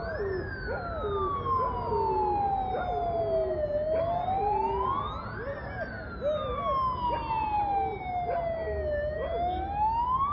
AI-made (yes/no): no